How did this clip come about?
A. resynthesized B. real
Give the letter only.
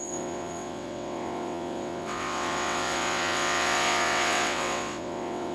A